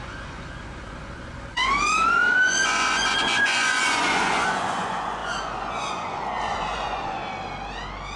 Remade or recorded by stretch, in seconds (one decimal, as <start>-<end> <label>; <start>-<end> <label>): 0.0-7.2 remade; 7.2-8.2 recorded